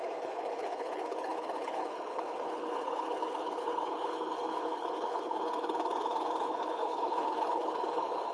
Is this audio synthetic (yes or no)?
yes